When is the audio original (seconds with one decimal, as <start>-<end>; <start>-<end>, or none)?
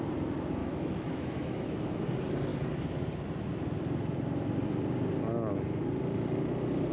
0.0-0.6; 2.0-6.9